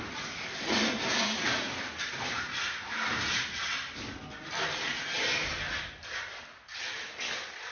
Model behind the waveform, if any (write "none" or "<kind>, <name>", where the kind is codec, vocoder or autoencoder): none